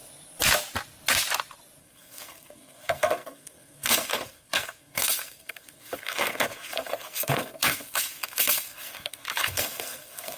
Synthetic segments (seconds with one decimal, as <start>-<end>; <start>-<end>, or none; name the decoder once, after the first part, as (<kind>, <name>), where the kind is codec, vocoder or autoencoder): 1.8-10.4 (codec, SNAC)